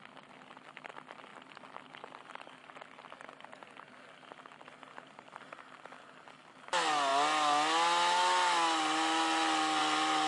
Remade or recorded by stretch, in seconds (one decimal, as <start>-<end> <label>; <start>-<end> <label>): 0.0-10.3 recorded